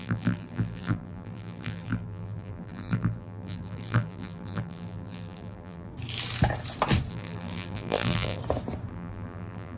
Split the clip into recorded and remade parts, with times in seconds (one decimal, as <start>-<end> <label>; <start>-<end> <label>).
0.0-5.9 remade; 5.9-7.1 recorded; 7.1-8.4 remade; 8.4-8.9 recorded; 8.9-9.8 remade